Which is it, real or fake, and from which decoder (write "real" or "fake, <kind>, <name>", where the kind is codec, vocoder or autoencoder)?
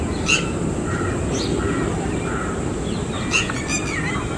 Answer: real